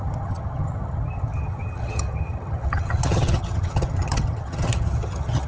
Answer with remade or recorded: remade